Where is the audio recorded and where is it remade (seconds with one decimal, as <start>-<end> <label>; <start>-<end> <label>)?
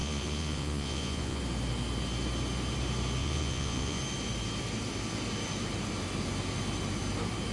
0.0-1.4 remade; 1.4-3.2 recorded; 3.2-4.0 remade; 4.0-7.5 recorded